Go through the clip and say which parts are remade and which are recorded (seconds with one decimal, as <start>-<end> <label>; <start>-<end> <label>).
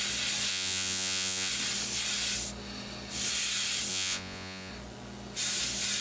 0.0-0.5 recorded; 0.5-1.5 remade; 1.5-3.9 recorded; 3.9-4.7 remade; 4.7-6.0 recorded